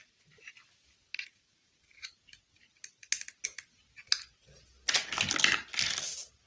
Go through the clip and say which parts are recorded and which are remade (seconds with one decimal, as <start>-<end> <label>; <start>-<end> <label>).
0.0-1.1 recorded; 1.1-2.2 remade; 2.2-6.5 recorded